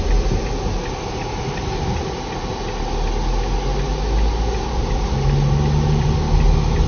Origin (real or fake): real